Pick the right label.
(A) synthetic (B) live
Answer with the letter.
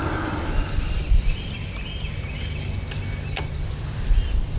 B